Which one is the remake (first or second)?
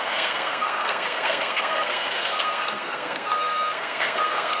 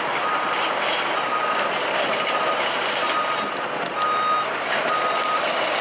first